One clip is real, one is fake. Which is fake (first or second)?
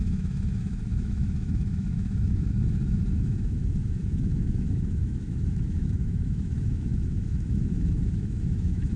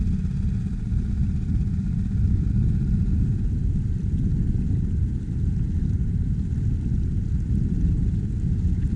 first